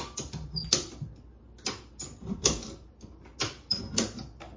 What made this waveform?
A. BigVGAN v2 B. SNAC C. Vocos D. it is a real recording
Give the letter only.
D